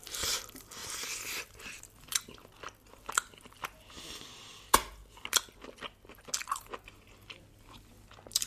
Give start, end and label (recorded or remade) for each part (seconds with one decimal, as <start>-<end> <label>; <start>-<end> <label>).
0.0-8.5 recorded